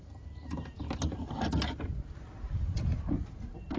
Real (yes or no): yes